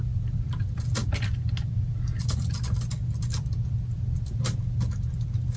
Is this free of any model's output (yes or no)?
yes